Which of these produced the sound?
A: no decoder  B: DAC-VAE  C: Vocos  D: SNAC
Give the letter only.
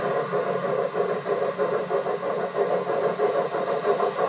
A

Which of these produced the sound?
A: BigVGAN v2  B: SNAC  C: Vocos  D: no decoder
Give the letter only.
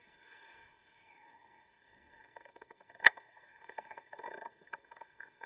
B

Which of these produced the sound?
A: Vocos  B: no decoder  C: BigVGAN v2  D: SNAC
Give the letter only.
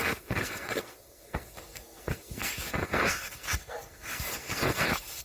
D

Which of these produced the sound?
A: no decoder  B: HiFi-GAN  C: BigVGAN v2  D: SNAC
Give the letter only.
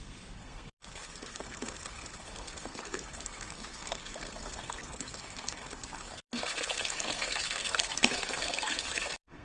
D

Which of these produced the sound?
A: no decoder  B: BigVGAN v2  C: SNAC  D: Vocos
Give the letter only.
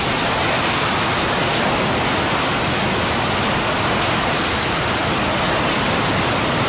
A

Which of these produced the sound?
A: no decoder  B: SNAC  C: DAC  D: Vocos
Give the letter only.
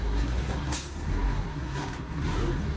B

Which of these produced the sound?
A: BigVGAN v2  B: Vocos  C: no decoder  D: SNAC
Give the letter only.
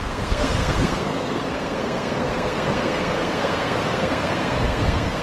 D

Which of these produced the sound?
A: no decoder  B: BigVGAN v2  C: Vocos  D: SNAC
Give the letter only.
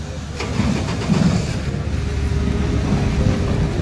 A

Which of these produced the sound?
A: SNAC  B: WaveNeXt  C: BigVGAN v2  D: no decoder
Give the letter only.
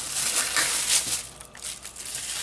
D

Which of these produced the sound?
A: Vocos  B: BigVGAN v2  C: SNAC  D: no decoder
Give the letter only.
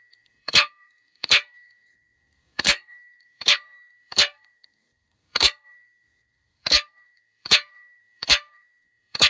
C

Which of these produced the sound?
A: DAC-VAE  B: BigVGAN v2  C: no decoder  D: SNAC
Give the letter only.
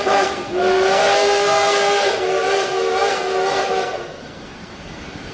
D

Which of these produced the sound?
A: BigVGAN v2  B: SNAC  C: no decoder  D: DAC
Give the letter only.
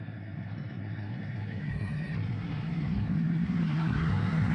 B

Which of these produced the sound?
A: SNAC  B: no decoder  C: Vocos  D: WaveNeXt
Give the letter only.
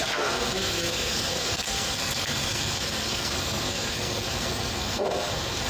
A